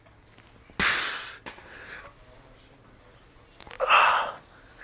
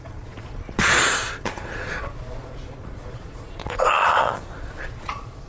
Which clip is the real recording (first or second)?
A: first